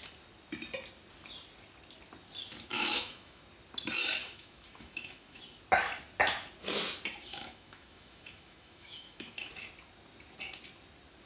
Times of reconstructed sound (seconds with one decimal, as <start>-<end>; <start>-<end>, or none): 2.7-3.4; 4.2-5.4; 7.3-9.5